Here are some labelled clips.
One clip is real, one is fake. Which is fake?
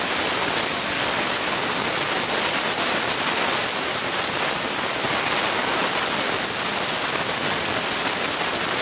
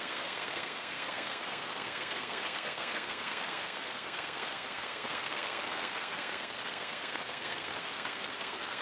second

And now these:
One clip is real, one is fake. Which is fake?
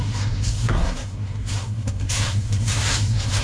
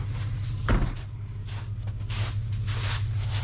first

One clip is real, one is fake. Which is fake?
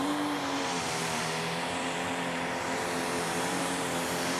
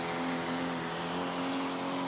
first